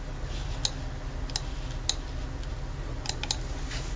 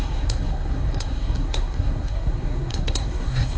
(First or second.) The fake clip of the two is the second